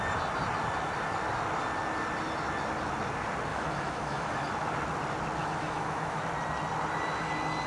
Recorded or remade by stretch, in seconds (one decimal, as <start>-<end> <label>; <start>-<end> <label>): 0.0-3.5 recorded; 3.5-4.5 remade; 4.5-5.4 recorded; 5.4-6.2 remade; 6.2-7.7 recorded